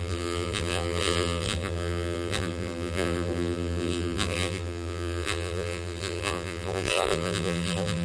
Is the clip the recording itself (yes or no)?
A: no